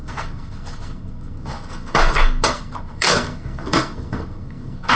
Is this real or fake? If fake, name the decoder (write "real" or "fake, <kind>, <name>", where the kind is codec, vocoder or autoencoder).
fake, codec, SNAC